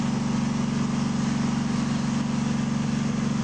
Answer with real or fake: real